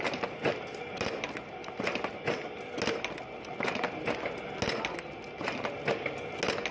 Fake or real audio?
real